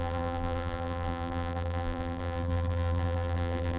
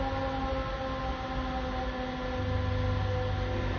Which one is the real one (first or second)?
second